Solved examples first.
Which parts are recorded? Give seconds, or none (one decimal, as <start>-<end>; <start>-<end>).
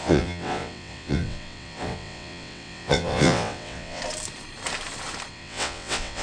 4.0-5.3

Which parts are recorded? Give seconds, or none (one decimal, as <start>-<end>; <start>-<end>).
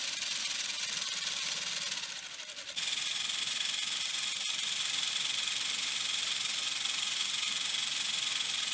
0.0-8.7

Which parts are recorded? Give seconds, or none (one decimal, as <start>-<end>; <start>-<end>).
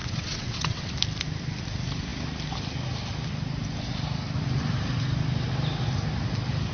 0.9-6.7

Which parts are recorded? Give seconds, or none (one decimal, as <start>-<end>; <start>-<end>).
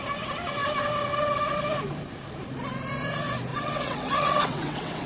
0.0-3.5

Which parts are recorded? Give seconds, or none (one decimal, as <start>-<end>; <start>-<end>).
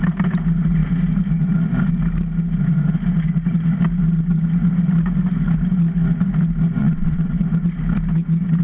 0.0-6.8; 7.3-8.6